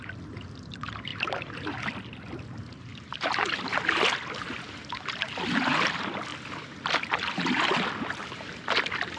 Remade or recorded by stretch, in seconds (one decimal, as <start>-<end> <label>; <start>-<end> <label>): 0.0-9.2 recorded